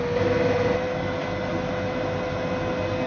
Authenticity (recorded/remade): recorded